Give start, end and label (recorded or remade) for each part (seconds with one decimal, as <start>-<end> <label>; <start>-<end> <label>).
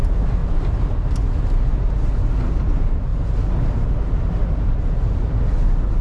0.0-0.4 recorded; 0.4-1.6 remade; 1.6-6.0 recorded